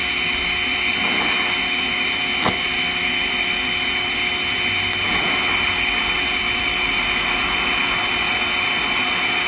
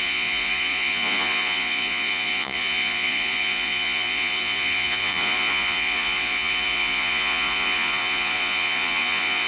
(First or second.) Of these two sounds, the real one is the first